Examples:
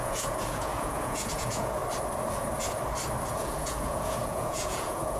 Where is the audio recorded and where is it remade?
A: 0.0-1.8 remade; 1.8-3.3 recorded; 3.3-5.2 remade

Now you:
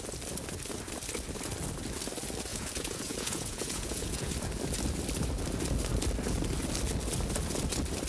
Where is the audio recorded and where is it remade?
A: 0.0-2.5 recorded; 2.5-4.3 remade; 4.3-8.1 recorded